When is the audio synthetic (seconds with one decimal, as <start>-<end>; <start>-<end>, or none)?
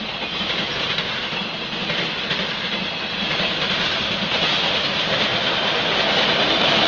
none